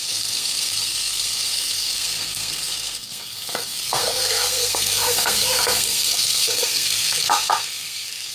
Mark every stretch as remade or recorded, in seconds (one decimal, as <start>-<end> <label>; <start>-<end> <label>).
0.0-8.3 remade